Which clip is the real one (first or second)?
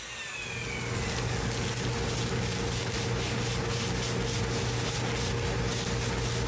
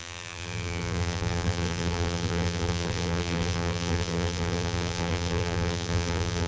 first